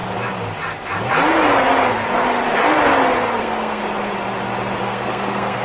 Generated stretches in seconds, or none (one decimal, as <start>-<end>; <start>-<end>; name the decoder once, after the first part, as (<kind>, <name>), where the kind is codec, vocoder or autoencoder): 3.4-3.8 (codec, SNAC); 4.8-5.6